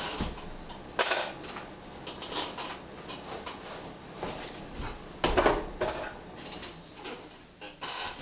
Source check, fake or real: real